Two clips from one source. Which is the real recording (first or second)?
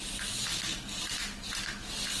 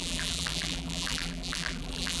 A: first